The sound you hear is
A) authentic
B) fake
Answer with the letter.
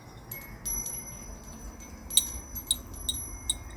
A